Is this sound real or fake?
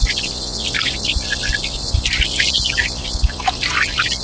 real